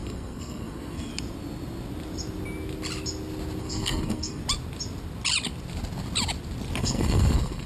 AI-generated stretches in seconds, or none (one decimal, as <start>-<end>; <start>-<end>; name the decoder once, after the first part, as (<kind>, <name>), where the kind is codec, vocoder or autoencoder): 0.0-1.1 (codec, SNAC); 3.6-4.4; 6.8-7.7